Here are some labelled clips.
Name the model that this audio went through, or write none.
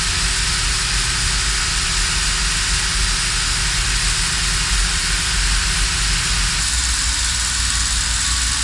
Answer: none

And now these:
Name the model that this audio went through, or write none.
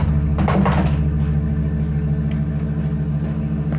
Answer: none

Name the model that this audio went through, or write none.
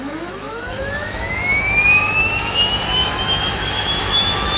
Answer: autoencoder, DAC-VAE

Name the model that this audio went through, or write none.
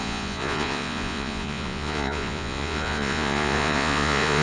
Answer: vocoder, Vocos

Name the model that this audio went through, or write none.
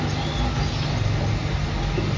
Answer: none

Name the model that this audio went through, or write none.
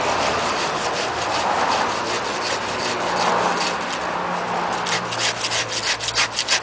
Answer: none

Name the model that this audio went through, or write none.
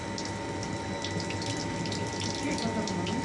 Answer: none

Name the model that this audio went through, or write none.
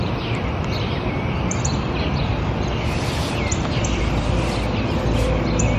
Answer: none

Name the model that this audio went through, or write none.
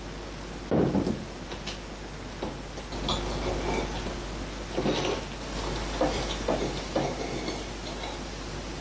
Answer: none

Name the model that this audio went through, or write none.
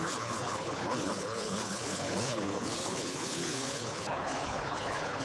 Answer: codec, HILCodec